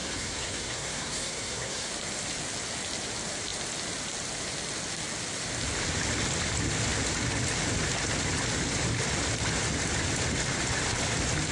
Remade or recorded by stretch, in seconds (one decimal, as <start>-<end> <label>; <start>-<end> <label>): 0.0-1.9 remade; 1.9-11.5 recorded